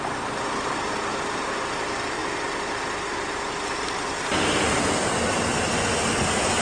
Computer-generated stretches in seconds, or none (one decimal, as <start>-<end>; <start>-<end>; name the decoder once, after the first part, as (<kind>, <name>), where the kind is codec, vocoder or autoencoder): none